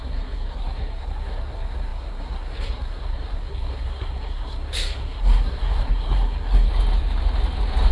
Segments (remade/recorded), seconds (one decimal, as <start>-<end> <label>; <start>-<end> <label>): 0.0-6.7 remade; 6.7-7.9 recorded